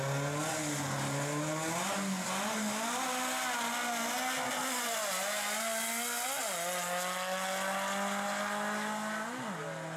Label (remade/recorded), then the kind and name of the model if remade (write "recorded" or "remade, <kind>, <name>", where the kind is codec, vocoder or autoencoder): recorded